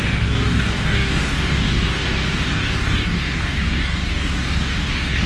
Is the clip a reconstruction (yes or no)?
yes